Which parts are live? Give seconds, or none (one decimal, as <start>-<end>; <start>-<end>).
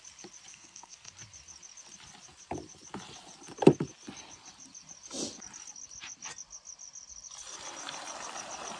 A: 0.0-0.5; 1.1-8.8